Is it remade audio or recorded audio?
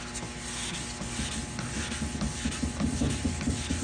recorded